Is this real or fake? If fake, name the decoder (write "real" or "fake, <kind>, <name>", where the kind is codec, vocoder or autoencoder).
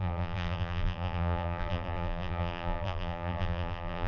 fake, vocoder, BigVGAN v2